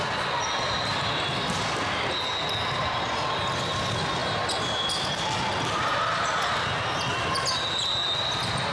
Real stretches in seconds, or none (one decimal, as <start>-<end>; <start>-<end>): 0.0-8.7